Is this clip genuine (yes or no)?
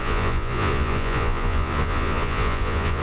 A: no